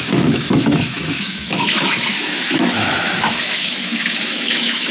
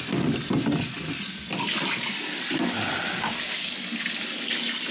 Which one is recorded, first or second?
second